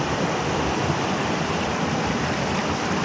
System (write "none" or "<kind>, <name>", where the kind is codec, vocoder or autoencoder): none